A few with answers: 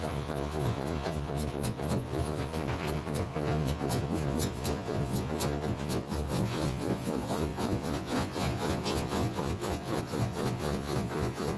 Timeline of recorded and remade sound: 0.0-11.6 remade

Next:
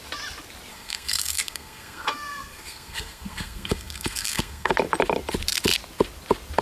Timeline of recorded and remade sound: 0.0-0.7 recorded; 0.7-4.7 remade; 4.7-6.6 recorded

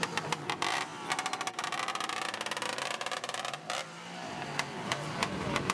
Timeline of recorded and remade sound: 0.0-5.7 recorded